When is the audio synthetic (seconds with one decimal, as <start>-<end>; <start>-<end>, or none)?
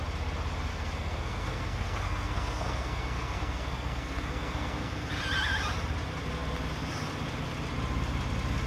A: 0.7-5.1